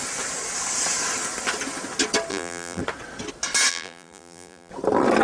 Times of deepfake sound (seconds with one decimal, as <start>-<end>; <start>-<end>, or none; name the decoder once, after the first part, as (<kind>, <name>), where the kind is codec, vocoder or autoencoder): 2.3-2.8 (vocoder, BigVGAN v2); 3.7-4.7